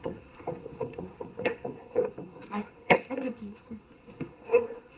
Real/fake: fake